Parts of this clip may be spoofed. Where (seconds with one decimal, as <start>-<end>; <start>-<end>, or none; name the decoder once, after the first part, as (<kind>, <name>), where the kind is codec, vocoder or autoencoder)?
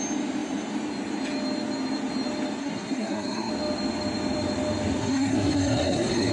2.6-3.5 (codec, SNAC); 5.0-6.3